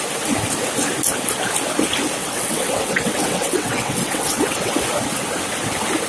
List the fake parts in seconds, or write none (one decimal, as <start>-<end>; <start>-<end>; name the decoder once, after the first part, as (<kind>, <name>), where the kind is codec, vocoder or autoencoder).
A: 2.2-4.8 (vocoder, WaveNeXt)